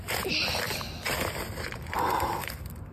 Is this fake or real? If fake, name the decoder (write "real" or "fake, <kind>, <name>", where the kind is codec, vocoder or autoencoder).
fake, vocoder, BigVGAN v2